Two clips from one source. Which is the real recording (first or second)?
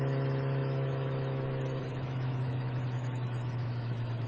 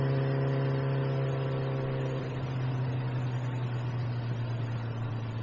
second